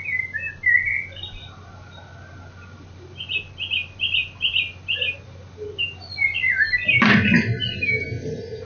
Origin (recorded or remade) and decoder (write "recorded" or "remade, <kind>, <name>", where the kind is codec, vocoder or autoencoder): recorded